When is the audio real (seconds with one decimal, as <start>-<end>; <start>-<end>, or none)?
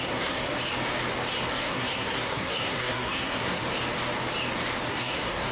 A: 0.5-1.5; 3.6-4.9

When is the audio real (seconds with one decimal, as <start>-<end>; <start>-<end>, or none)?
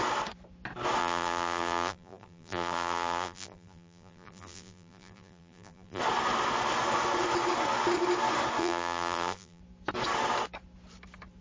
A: 0.0-1.0; 6.0-8.6; 9.6-11.4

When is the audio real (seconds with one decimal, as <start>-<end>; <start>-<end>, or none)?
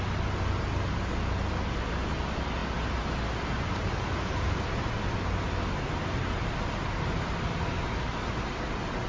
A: 0.0-9.1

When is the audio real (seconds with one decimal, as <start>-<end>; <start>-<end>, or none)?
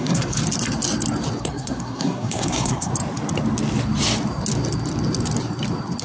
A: 0.4-1.4; 2.9-6.0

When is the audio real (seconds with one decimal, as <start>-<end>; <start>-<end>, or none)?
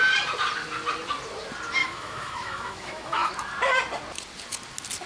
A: 0.0-1.8; 3.3-5.1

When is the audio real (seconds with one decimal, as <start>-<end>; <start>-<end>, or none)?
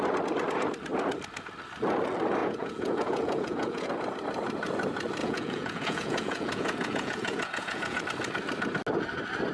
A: 0.0-2.4; 3.9-5.2; 8.0-9.5